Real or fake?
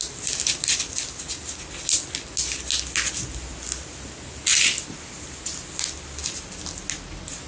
real